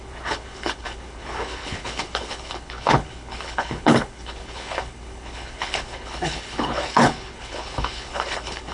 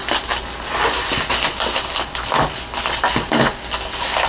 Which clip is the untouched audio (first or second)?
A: second